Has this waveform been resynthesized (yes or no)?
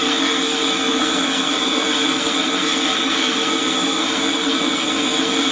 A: yes